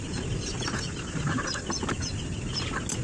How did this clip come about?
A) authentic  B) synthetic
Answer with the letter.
A